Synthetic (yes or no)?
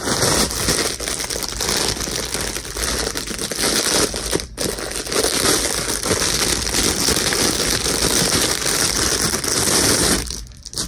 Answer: no